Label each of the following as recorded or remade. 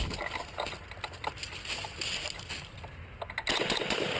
recorded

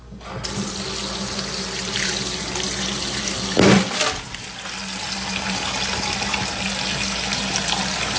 recorded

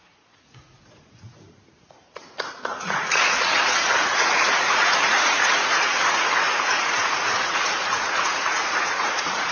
remade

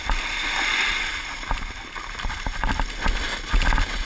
recorded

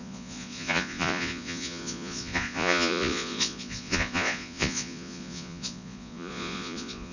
remade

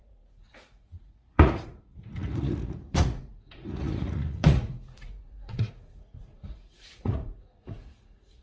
remade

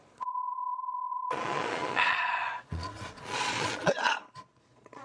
remade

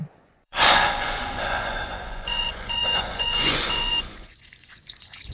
remade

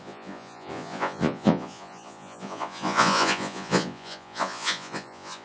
remade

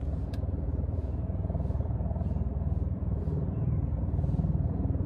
remade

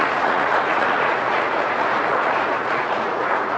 remade